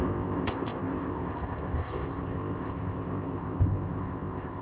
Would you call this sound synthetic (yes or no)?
yes